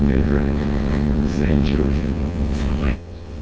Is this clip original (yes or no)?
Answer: no